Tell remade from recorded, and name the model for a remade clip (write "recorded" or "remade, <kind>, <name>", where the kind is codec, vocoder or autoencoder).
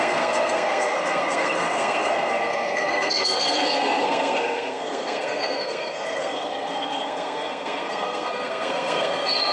remade, codec, SNAC